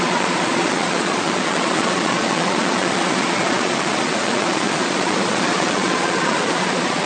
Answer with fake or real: fake